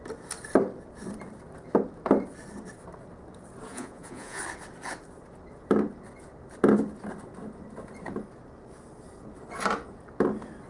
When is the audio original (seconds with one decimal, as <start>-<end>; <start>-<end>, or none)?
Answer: 0.0-3.7; 4.4-10.7